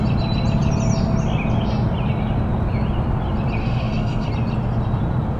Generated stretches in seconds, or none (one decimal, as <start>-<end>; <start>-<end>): 3.6-4.3